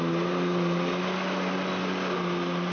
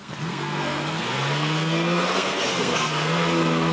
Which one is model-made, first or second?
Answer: second